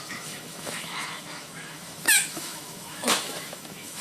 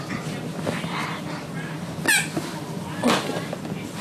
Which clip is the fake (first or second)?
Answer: first